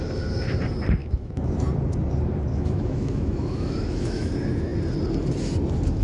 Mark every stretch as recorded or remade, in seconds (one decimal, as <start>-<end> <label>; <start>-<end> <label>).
0.0-1.0 recorded; 1.0-1.5 remade; 1.5-2.5 recorded; 2.5-4.3 remade; 4.3-6.0 recorded